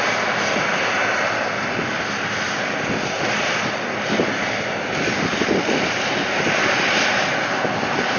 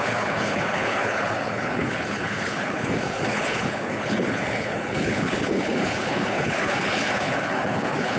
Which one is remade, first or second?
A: second